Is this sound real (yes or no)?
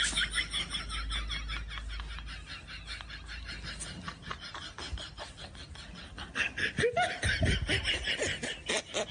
yes